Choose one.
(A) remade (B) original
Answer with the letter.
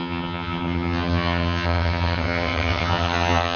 A